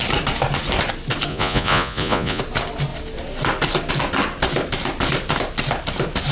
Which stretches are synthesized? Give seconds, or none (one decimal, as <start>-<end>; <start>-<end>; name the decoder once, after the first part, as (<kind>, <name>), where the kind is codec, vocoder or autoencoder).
1.3-2.4 (vocoder, Vocos)